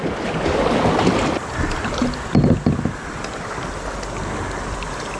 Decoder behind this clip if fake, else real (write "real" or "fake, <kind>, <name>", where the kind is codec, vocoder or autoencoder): real